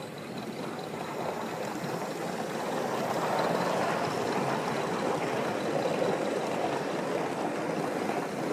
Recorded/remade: recorded